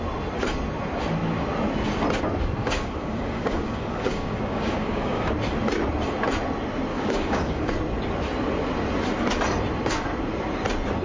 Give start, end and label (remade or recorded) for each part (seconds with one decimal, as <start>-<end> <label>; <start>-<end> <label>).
0.0-2.6 recorded; 2.6-5.3 remade; 5.3-6.9 recorded; 6.9-7.7 remade; 7.7-11.0 recorded